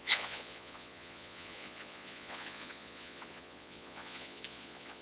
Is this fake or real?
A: fake